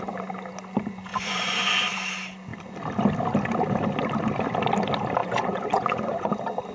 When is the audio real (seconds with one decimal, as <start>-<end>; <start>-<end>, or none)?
0.0-1.1; 1.9-5.2; 6.3-6.7